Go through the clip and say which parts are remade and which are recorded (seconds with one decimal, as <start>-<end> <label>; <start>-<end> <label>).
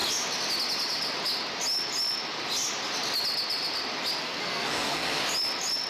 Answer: 0.0-4.2 recorded; 4.2-5.2 remade; 5.2-5.9 recorded